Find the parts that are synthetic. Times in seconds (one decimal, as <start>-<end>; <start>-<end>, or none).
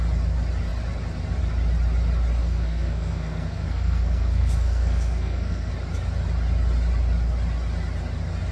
2.4-5.7